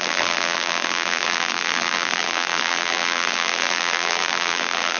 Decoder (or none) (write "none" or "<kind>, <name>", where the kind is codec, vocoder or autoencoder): vocoder, BigVGAN v2